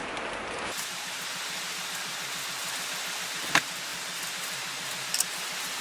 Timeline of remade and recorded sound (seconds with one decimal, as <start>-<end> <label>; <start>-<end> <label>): 0.0-5.8 recorded